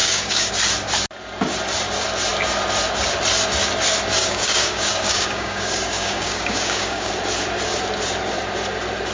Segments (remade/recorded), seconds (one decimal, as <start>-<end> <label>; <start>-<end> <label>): 0.0-0.5 remade; 0.5-4.2 recorded; 4.2-7.1 remade; 7.1-9.1 recorded